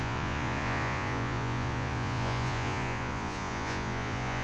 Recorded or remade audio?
remade